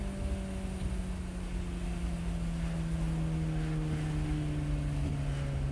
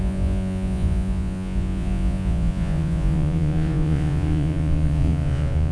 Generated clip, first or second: second